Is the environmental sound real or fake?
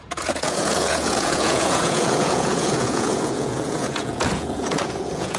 fake